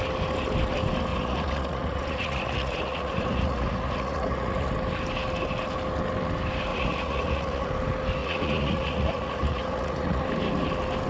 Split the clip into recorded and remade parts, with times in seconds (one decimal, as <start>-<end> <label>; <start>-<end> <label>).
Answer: 0.0-1.1 recorded; 1.1-4.7 remade; 4.7-6.7 recorded; 6.7-7.7 remade; 7.7-8.2 recorded; 8.2-10.2 remade; 10.2-11.1 recorded